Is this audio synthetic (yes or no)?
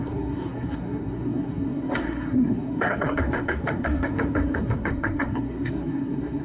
yes